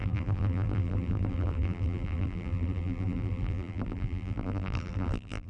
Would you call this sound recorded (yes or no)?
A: no